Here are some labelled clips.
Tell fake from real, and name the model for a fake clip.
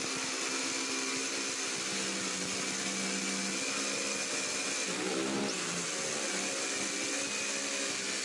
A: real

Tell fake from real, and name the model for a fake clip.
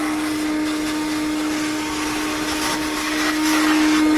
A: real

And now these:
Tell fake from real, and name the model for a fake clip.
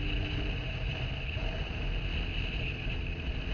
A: real